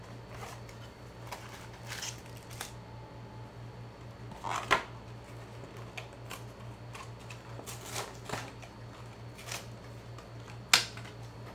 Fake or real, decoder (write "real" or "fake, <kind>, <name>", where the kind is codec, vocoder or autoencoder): real